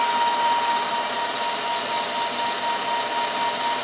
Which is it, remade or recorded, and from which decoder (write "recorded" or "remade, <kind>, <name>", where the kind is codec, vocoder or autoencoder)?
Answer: recorded